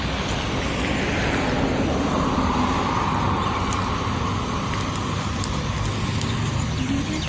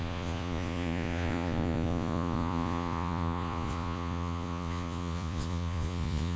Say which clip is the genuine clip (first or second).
first